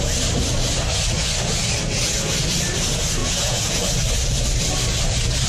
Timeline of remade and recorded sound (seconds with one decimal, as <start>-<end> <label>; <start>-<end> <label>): 0.0-3.2 recorded; 3.2-3.8 remade; 3.8-5.5 recorded